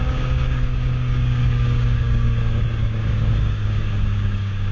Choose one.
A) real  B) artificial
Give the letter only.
B